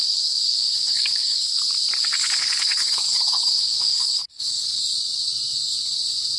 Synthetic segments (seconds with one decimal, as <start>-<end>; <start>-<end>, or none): 0.0-1.6; 2.2-4.8